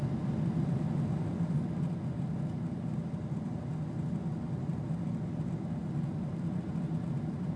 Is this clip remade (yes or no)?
no